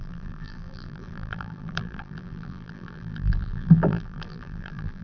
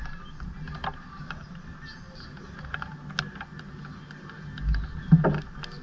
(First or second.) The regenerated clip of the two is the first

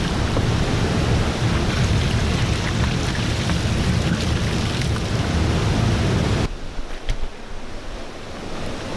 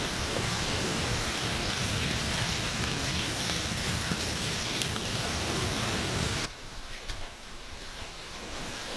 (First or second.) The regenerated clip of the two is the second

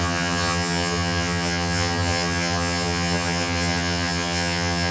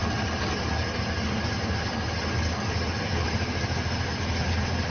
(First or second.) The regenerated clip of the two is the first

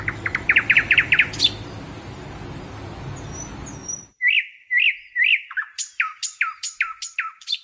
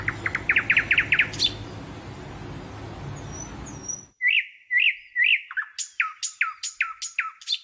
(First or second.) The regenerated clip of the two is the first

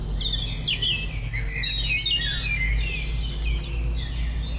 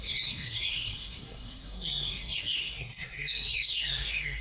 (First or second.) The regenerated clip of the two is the second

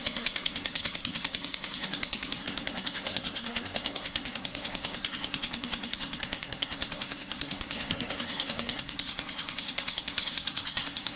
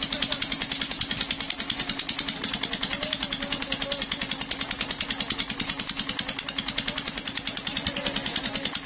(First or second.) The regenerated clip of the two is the first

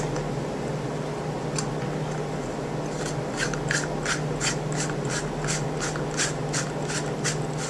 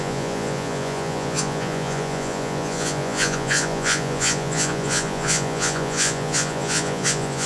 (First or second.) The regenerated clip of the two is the second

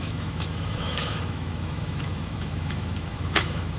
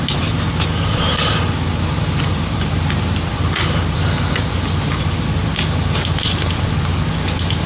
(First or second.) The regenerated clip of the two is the first